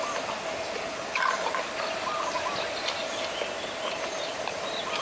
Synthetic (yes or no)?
no